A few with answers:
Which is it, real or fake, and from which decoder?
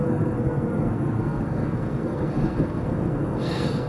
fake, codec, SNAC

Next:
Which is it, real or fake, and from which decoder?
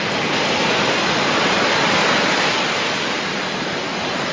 real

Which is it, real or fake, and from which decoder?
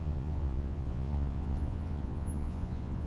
fake, vocoder, Vocos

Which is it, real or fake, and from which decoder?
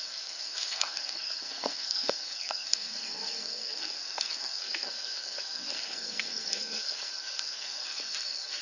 fake, codec, SNAC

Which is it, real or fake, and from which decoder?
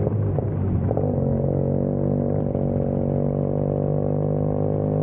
real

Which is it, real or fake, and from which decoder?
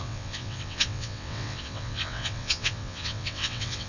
fake, vocoder, WaveNeXt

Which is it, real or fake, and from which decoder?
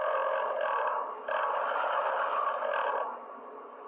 real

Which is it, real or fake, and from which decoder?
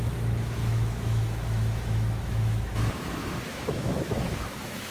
fake, autoencoder, DAC-VAE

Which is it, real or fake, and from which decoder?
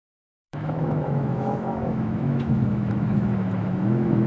fake, autoencoder, DAC-VAE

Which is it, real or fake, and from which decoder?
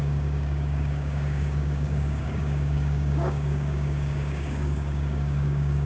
fake, codec, DAC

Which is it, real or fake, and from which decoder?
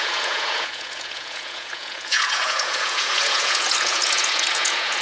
fake, vocoder, Vocos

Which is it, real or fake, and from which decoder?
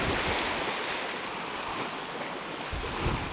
real